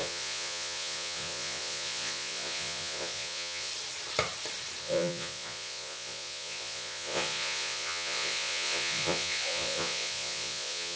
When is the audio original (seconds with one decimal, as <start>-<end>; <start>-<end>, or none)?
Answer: 3.7-4.8